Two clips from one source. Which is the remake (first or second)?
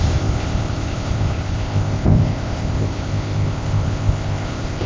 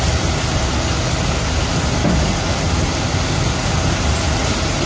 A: first